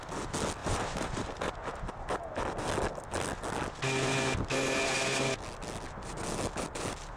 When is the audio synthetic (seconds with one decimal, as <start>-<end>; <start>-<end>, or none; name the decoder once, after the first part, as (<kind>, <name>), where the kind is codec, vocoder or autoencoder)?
0.6-1.5 (vocoder, BigVGAN v2)